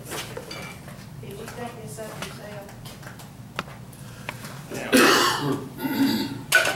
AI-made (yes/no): no